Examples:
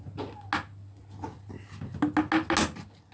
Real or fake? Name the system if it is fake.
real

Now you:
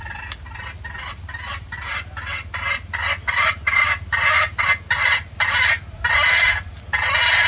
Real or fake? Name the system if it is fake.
real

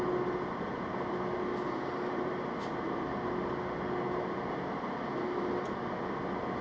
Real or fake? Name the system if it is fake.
real